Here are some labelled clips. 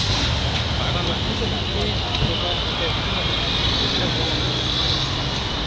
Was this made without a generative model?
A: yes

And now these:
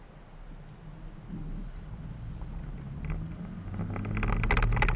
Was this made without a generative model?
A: yes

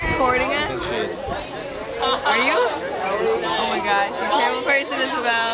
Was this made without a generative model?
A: yes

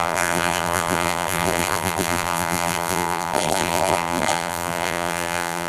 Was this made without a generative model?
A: no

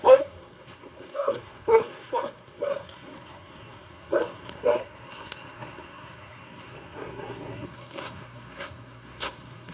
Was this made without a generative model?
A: no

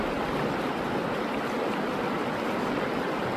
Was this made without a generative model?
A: yes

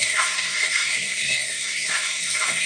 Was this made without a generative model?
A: no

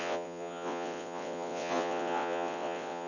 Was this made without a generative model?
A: no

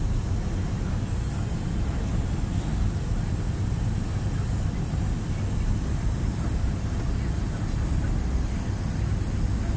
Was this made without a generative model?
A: yes